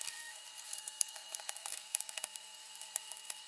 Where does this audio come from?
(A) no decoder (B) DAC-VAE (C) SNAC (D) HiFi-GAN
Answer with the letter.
C